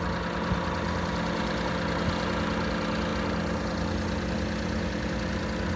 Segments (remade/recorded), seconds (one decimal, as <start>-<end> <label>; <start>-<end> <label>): 0.0-5.8 recorded